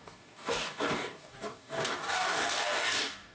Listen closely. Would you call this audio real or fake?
fake